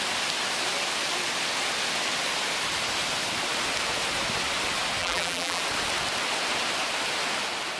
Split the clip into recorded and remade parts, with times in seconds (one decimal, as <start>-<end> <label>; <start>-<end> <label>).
0.0-5.0 recorded; 5.0-5.6 remade; 5.6-7.8 recorded